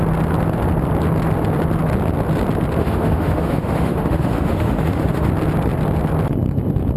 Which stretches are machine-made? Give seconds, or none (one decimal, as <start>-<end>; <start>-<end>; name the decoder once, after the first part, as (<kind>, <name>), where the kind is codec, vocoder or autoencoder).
2.8-5.3 (autoencoder, DAC-VAE)